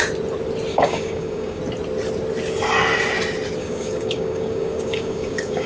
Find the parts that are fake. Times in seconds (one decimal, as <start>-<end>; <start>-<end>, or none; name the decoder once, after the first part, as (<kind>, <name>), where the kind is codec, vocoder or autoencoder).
0.7-1.6 (codec, DAC); 3.6-5.7